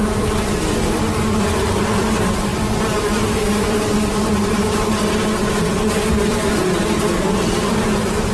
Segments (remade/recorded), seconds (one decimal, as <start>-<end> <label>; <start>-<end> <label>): 0.0-1.6 recorded; 1.6-8.3 remade